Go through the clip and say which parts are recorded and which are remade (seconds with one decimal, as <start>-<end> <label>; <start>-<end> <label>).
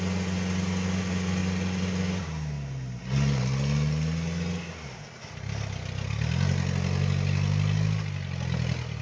0.0-9.0 recorded